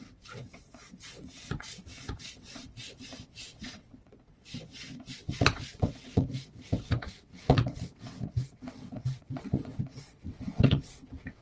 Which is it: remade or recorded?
remade